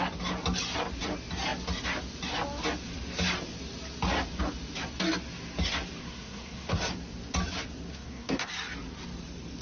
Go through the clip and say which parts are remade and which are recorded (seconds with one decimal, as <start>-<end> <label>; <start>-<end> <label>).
0.0-6.0 recorded; 6.0-6.8 remade; 6.8-7.9 recorded; 7.9-8.5 remade; 8.5-9.6 recorded